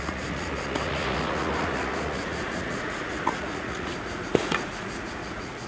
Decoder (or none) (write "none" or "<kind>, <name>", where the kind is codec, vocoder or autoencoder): vocoder, Vocos